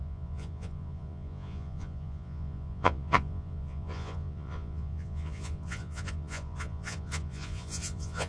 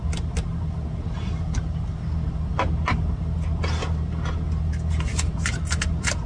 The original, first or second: second